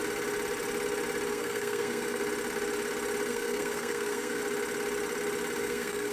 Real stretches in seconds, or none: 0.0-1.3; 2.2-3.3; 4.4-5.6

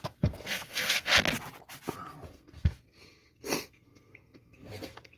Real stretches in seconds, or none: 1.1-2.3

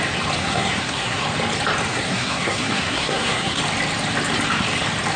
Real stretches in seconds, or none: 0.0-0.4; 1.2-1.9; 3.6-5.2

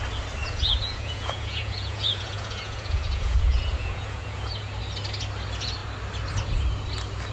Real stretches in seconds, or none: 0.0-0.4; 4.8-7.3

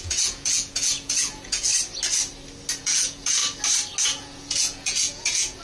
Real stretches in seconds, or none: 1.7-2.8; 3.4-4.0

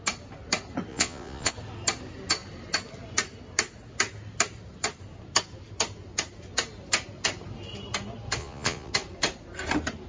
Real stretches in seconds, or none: 0.0-0.9; 1.5-8.4; 8.9-10.1

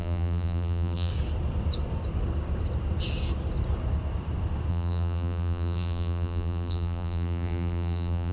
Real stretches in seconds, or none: 1.1-4.7

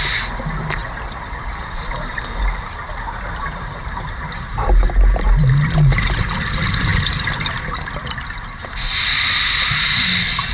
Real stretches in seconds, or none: 0.0-0.8; 1.6-10.5